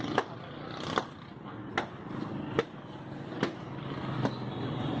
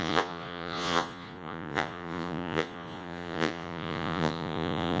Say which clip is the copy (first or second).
second